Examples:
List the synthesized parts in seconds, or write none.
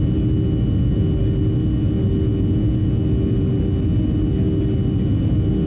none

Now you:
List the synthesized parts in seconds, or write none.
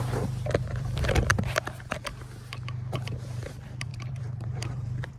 0.0-1.3; 2.0-5.2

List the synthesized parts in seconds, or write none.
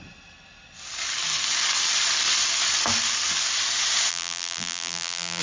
4.1-5.4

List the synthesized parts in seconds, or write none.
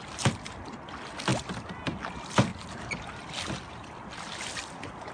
none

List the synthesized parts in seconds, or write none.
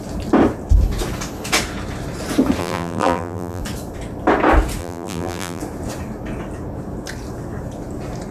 2.6-3.6; 4.8-5.6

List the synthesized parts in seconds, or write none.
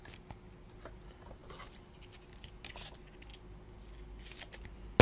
none